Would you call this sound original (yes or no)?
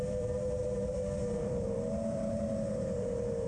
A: no